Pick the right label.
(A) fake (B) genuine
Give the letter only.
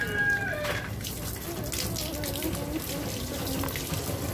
B